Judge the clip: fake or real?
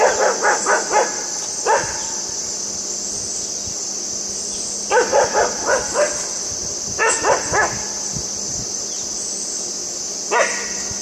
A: real